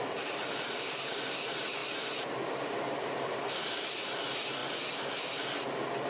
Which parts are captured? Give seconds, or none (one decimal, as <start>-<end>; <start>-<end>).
0.0-6.1